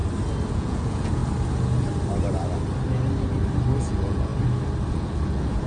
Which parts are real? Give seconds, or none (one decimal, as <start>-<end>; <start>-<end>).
0.0-0.5; 1.2-3.8; 4.3-4.9